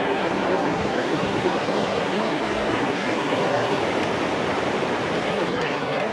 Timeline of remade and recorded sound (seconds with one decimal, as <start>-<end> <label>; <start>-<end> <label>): 0.0-3.8 remade; 3.8-5.2 recorded; 5.2-6.1 remade